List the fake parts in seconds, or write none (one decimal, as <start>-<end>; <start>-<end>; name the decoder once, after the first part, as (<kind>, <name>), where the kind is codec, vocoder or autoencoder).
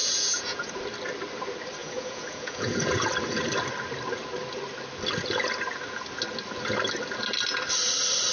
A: 0.0-0.8 (vocoder, Vocos); 1.8-3.1